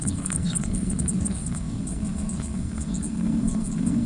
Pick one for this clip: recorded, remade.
remade